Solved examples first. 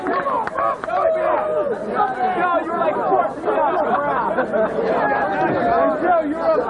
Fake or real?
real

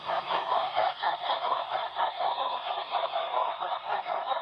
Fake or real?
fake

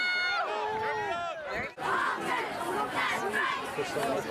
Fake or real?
real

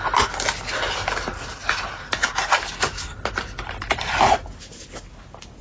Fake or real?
real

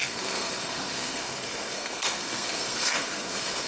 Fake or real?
fake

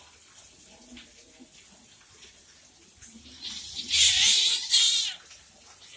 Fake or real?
real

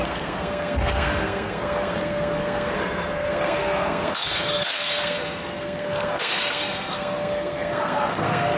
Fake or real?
fake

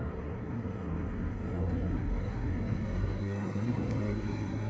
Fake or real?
fake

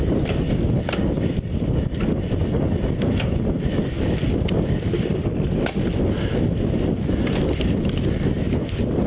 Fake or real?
real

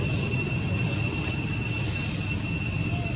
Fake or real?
real